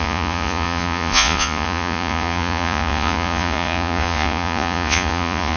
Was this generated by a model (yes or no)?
yes